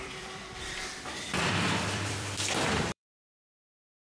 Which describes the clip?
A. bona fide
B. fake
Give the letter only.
B